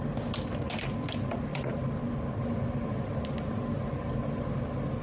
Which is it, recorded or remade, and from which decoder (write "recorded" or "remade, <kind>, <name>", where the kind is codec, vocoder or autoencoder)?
recorded